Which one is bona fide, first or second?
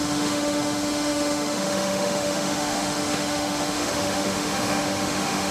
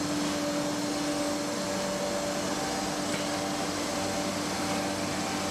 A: second